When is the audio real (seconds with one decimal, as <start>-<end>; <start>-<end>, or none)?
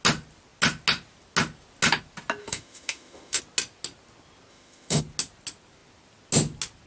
0.0-2.4; 3.4-4.5; 5.0-6.9